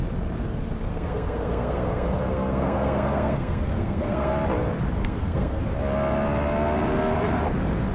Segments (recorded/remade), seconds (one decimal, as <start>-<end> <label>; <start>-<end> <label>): 0.0-0.9 recorded; 0.9-4.3 remade; 4.3-5.0 recorded; 5.0-5.6 remade; 5.6-7.9 recorded

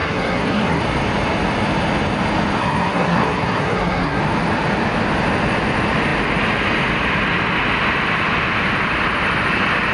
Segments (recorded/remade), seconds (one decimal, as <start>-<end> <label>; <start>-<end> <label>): 0.0-0.8 remade; 0.8-2.6 recorded; 2.6-4.2 remade; 4.2-9.9 recorded

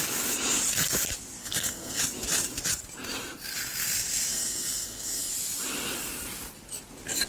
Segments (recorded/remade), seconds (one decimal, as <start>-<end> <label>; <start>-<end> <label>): 0.0-1.4 recorded; 1.4-2.0 remade; 2.0-4.3 recorded; 4.3-5.3 remade; 5.3-7.3 recorded